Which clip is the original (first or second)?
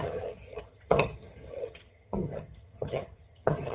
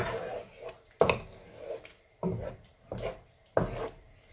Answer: second